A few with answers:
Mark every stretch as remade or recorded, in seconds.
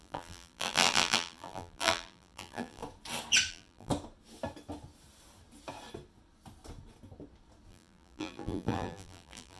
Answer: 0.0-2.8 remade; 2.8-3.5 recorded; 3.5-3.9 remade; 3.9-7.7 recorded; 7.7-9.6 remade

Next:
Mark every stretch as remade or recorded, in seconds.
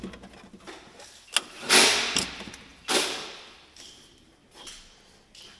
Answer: 0.0-2.7 recorded; 2.7-4.3 remade; 4.3-5.6 recorded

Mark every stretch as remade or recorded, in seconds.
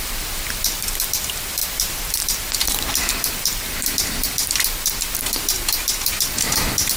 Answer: 0.0-7.0 remade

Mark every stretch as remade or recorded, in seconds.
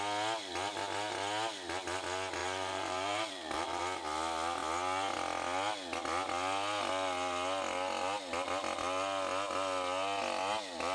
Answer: 0.0-2.4 recorded; 2.4-3.8 remade; 3.8-10.9 recorded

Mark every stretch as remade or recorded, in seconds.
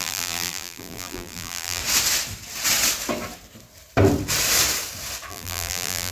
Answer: 0.0-1.8 remade; 1.8-5.3 recorded; 5.3-6.1 remade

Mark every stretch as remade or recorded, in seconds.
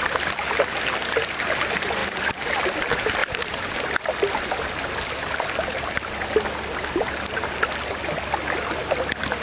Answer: 0.0-9.4 recorded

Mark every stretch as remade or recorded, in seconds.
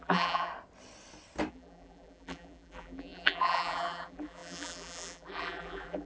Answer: 0.0-0.5 remade; 0.5-1.5 recorded; 1.5-6.1 remade